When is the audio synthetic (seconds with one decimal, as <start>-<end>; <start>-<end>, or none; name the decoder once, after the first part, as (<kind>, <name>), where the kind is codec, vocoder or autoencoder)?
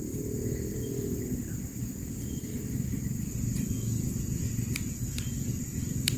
none